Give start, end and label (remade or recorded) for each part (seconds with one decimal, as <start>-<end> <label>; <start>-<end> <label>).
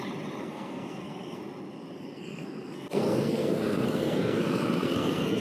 0.0-0.4 recorded; 0.4-1.4 remade; 1.4-2.0 recorded; 2.0-5.4 remade